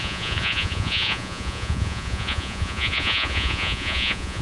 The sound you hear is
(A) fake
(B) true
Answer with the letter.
A